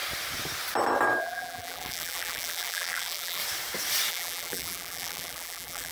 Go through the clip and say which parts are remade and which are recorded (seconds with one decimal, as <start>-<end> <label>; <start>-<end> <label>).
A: 0.0-1.2 recorded; 1.2-3.4 remade; 3.4-4.1 recorded; 4.1-5.9 remade